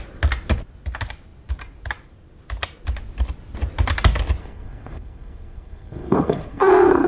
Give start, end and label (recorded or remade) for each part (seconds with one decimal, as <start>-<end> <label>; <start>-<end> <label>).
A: 0.0-4.4 recorded; 4.4-7.1 remade